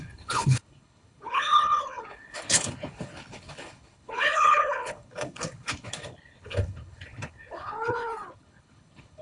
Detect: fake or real fake